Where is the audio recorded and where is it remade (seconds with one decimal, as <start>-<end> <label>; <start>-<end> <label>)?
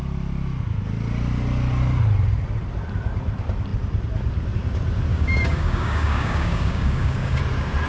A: 0.0-5.1 recorded; 5.1-7.4 remade; 7.4-7.9 recorded